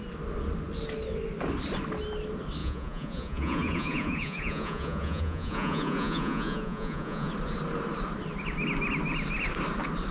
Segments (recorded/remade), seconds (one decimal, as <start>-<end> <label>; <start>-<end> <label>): 0.0-2.6 recorded; 2.6-7.3 remade; 7.3-10.1 recorded